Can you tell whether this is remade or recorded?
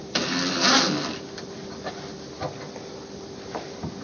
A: recorded